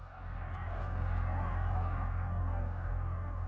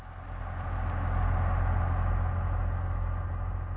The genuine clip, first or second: second